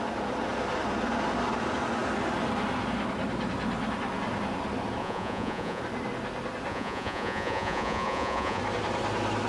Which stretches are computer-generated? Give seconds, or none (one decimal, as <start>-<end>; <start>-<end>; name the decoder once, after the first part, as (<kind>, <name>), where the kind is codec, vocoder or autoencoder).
5.0-5.8 (vocoder, Vocos); 6.7-8.6